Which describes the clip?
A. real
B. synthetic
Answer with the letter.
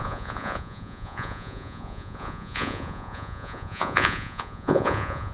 B